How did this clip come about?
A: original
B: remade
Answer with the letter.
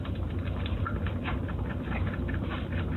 B